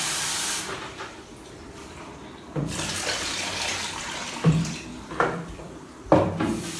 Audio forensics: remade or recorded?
remade